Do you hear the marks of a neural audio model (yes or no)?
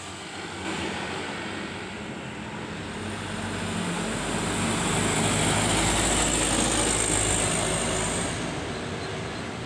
no